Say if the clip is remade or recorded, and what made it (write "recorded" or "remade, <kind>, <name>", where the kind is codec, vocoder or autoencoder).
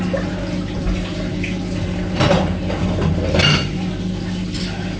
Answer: recorded